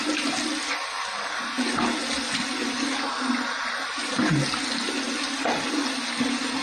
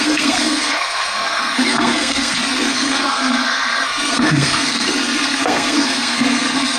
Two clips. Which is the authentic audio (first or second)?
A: first